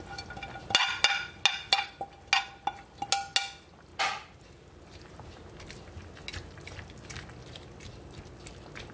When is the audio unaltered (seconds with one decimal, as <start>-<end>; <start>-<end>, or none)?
0.0-3.9; 5.4-8.9